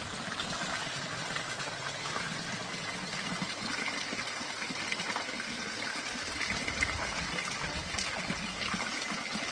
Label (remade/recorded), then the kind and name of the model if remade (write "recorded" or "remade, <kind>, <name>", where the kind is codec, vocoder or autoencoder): recorded